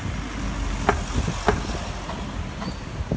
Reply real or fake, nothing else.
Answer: real